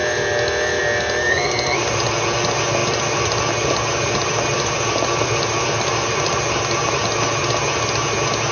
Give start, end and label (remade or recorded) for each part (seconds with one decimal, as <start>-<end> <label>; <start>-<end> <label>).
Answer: 0.0-2.8 recorded; 2.8-6.9 remade; 6.9-8.5 recorded